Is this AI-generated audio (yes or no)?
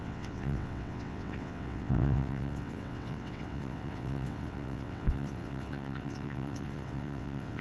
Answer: yes